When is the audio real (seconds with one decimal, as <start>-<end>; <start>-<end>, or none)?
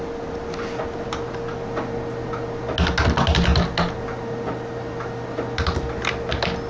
0.0-6.7